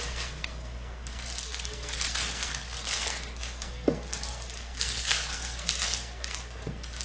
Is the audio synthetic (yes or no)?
yes